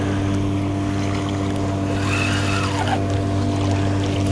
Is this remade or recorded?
recorded